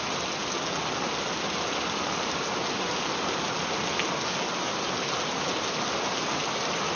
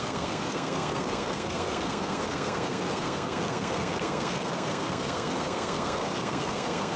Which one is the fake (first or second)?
second